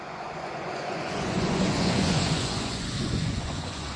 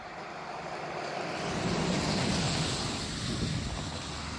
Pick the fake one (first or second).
first